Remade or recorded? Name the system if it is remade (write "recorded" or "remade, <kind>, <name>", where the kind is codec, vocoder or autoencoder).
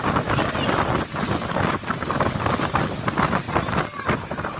recorded